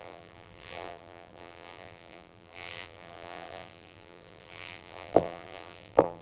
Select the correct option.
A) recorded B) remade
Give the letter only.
B